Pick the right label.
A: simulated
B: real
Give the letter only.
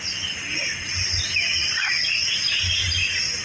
B